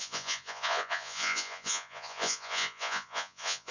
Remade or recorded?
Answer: remade